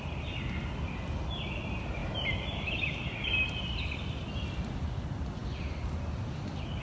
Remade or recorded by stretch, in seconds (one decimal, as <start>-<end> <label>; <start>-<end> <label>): 0.0-6.8 recorded